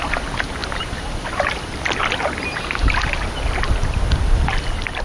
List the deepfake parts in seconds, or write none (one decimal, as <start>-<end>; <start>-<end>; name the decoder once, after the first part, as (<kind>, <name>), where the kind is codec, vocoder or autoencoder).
none